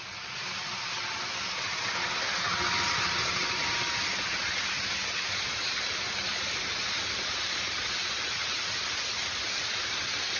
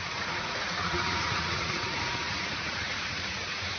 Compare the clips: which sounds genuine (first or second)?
first